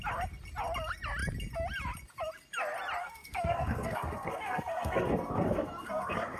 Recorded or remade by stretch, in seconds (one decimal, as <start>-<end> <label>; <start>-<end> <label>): 0.0-3.0 recorded; 3.0-6.4 remade